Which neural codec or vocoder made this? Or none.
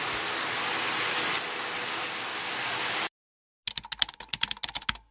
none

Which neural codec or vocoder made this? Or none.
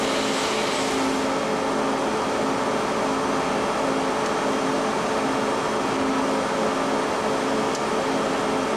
none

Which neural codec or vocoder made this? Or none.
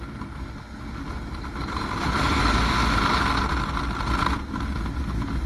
none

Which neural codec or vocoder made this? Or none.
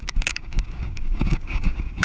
codec, DAC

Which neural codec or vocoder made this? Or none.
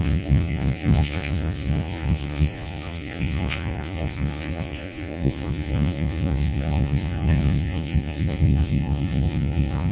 vocoder, Vocos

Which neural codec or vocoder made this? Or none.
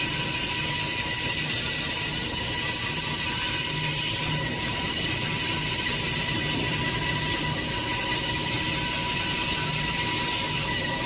none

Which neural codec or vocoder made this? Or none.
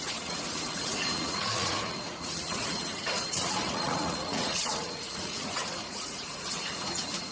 vocoder, Vocos